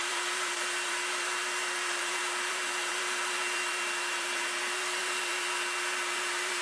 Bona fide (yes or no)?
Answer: no